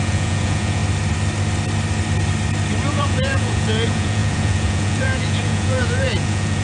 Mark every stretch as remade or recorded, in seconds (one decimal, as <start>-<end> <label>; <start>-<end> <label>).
0.0-0.8 remade; 0.8-2.9 recorded; 2.9-6.6 remade